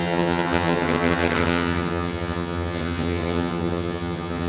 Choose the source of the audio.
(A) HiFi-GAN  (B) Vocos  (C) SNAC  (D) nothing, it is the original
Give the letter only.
A